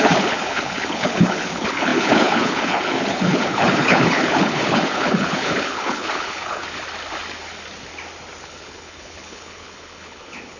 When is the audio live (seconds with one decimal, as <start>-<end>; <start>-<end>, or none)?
6.6-8.4